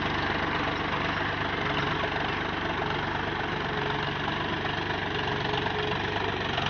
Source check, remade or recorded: recorded